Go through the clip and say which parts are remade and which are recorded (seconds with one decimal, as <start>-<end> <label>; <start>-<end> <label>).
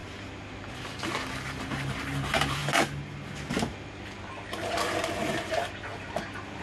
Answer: 0.0-1.6 recorded; 1.6-2.6 remade; 2.6-5.1 recorded; 5.1-5.9 remade; 5.9-6.6 recorded